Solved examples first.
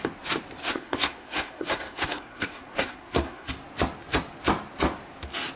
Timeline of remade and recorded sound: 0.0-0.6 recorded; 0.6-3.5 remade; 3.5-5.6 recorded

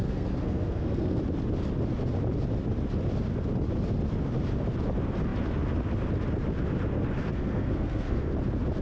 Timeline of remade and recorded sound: 0.0-1.2 remade; 1.2-7.2 recorded; 7.2-8.3 remade; 8.3-8.8 recorded